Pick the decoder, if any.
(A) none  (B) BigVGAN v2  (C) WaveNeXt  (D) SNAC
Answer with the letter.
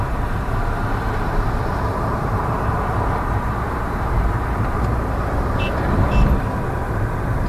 B